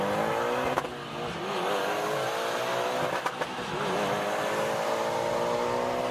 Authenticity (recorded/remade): recorded